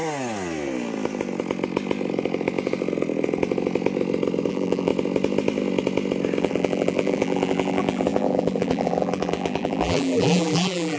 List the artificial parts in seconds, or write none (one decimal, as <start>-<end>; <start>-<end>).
4.5-4.9; 6.4-11.0